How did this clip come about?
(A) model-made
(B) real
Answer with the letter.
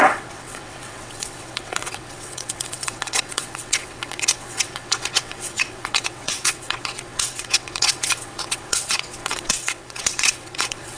A